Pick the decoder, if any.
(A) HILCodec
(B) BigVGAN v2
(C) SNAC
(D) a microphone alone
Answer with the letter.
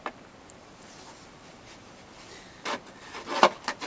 B